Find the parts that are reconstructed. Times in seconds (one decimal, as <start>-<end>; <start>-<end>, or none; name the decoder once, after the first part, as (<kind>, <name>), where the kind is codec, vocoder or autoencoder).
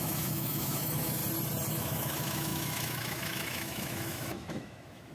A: 0.0-1.2 (autoencoder, DAC-VAE); 1.7-5.1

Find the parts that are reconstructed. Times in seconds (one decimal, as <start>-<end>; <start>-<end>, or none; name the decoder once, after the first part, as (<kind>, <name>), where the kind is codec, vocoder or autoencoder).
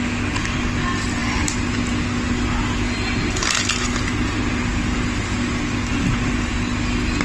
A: none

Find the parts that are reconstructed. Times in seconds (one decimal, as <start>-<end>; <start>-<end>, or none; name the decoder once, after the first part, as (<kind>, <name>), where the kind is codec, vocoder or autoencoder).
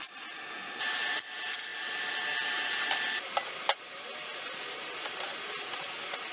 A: none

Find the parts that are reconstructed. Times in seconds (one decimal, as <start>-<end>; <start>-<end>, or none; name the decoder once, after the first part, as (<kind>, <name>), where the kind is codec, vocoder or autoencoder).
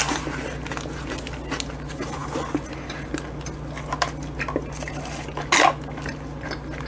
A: none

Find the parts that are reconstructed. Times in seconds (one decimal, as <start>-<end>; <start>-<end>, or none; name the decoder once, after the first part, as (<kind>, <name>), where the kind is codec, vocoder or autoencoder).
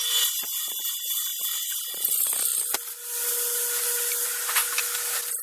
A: none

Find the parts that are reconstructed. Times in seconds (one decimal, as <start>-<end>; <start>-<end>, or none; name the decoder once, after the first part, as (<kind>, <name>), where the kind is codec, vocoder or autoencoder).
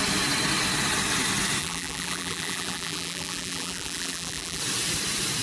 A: 1.6-4.6 (vocoder, BigVGAN v2)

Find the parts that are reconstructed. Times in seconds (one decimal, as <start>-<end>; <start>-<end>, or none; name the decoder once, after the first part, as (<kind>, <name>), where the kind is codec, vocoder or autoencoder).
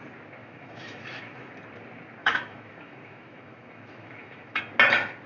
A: 0.4-1.5 (autoencoder, DAC-VAE); 2.2-4.6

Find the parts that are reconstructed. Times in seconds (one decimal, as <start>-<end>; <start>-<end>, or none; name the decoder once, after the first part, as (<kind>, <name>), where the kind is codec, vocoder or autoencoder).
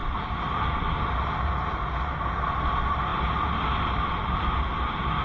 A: none